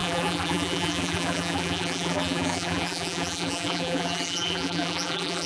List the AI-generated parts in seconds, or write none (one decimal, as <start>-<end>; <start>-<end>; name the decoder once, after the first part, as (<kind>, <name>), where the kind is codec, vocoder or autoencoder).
0.0-5.5 (vocoder, BigVGAN v2)